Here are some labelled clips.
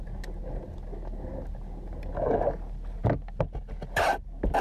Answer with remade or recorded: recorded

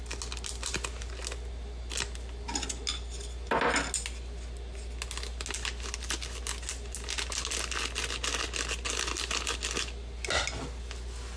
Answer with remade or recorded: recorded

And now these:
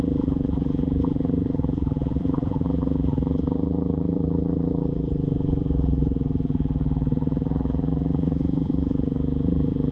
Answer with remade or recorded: remade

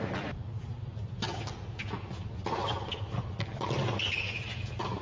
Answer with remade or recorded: recorded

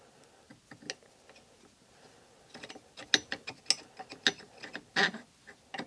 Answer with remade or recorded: recorded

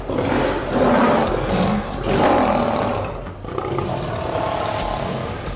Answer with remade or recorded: recorded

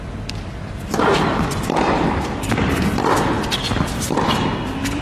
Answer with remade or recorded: recorded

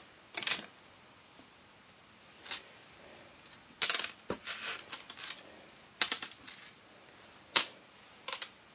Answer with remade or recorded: recorded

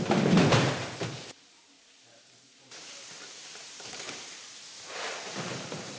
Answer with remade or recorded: remade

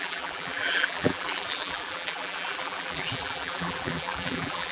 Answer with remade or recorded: remade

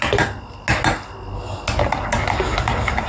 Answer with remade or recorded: recorded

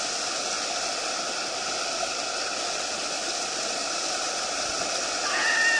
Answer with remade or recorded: recorded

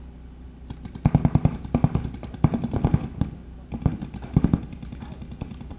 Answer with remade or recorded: recorded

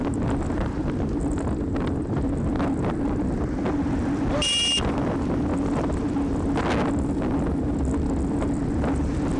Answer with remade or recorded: recorded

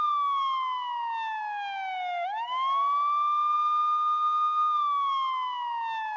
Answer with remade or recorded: recorded